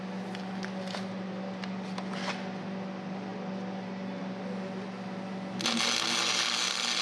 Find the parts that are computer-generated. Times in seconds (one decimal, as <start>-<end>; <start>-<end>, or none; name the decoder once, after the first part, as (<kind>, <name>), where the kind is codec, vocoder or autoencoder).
none